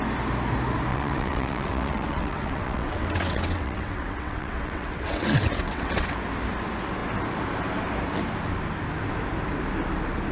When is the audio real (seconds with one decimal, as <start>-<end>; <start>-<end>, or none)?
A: 0.0-0.9; 6.1-10.3